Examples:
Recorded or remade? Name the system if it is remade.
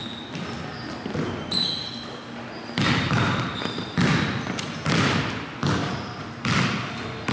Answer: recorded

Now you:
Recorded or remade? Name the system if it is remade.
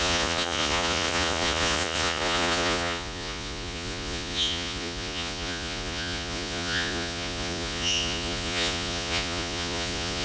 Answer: remade, vocoder, Vocos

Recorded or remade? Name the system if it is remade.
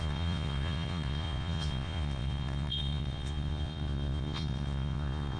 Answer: remade, vocoder, Vocos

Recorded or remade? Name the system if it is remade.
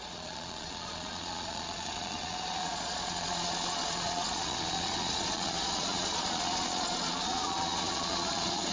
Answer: remade, vocoder, Vocos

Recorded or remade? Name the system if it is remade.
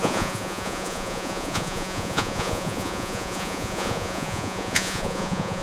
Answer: remade, vocoder, Vocos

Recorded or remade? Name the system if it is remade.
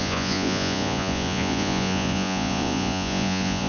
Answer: remade, vocoder, Vocos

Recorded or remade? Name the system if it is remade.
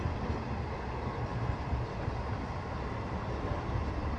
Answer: recorded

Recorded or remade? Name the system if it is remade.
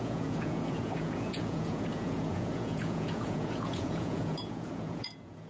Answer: remade, vocoder, Vocos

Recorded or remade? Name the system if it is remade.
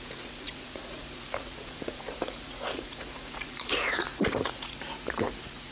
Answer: remade, vocoder, Vocos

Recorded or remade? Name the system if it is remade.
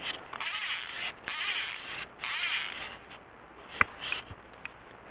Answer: recorded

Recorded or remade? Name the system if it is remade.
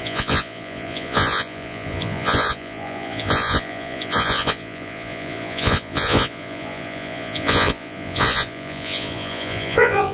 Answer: remade, vocoder, Vocos